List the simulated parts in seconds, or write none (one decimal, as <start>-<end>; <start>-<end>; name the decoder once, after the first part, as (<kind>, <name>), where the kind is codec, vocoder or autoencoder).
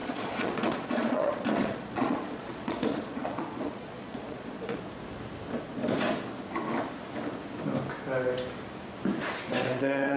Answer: 0.0-4.8 (vocoder, Vocos); 9.6-10.2